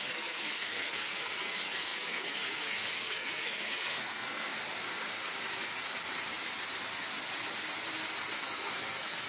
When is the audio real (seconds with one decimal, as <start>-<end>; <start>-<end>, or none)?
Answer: 4.5-8.2